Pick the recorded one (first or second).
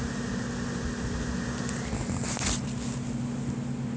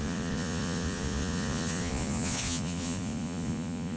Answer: first